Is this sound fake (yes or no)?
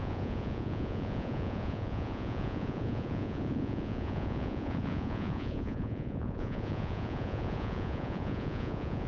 yes